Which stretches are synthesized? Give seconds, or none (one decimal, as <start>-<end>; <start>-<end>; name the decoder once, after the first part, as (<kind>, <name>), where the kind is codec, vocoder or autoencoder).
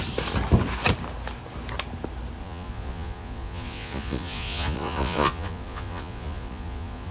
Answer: 2.4-7.1 (vocoder, Vocos)